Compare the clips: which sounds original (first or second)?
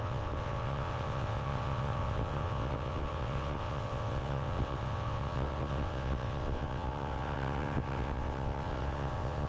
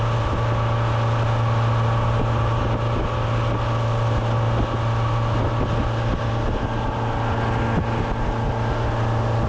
second